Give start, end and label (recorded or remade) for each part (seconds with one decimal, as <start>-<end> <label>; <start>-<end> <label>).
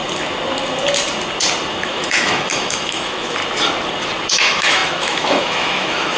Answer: 0.0-1.7 recorded; 1.7-3.4 remade; 3.4-4.3 recorded; 4.3-6.2 remade